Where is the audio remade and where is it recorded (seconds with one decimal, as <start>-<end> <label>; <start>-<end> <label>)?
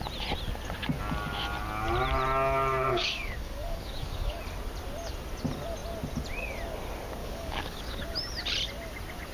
0.0-2.9 recorded; 2.9-4.4 remade; 4.4-7.2 recorded; 7.2-8.0 remade; 8.0-9.3 recorded